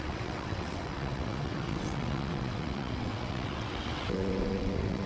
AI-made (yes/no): yes